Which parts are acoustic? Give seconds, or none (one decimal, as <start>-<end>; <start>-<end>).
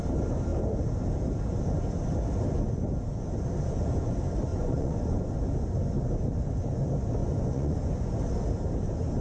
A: 0.0-4.5; 5.4-7.2; 8.1-9.2